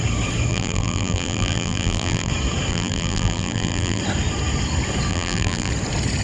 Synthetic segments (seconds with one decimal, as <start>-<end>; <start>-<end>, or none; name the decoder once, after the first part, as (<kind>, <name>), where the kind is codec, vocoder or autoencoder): 0.5-2.3 (vocoder, BigVGAN v2); 2.7-4.0; 5.1-5.7